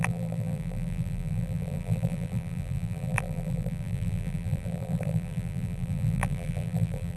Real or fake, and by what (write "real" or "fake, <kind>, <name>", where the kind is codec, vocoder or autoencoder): fake, vocoder, BigVGAN v2